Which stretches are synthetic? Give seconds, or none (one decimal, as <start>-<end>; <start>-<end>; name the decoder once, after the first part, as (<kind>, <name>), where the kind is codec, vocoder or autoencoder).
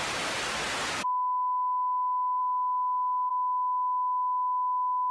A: 1.0-2.4 (autoencoder, DAC-VAE)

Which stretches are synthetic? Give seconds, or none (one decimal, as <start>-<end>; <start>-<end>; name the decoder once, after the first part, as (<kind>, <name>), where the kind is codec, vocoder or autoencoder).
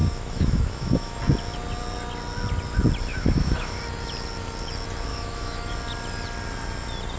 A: 0.0-1.2 (autoencoder, DAC-VAE); 3.1-3.8; 5.1-5.7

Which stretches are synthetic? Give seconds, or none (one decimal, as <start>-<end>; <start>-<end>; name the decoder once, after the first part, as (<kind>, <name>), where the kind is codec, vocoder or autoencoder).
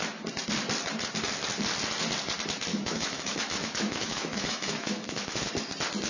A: 2.7-5.5 (autoencoder, DAC-VAE)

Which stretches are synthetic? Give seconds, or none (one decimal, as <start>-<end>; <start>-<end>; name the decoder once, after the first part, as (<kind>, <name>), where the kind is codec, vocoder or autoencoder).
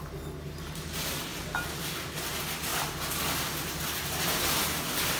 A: none